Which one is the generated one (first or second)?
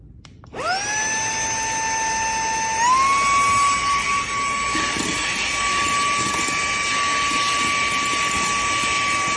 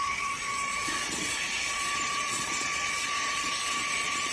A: second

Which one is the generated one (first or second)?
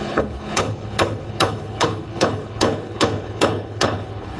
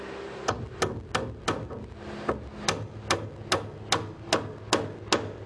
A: first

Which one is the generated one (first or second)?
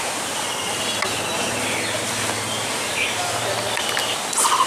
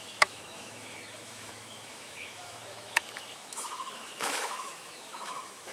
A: second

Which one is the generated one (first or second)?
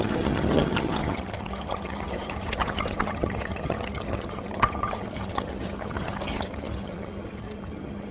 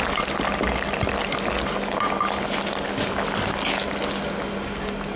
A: first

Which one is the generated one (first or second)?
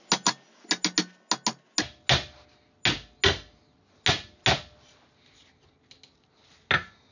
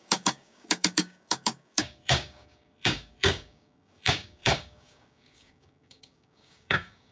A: second